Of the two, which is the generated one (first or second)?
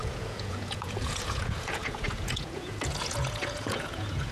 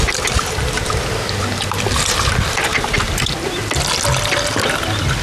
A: first